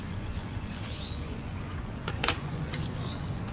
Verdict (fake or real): fake